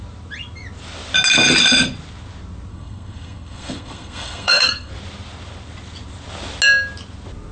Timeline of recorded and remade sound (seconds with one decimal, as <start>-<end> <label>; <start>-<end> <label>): 0.0-2.7 recorded; 2.7-4.9 remade; 4.9-7.5 recorded